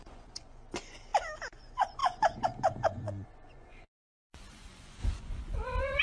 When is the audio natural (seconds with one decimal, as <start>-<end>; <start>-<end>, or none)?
1.1-1.6